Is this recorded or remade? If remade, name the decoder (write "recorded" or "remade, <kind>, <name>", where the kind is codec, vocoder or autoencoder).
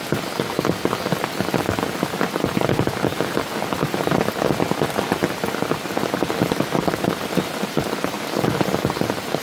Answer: recorded